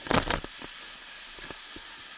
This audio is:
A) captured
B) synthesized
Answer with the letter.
A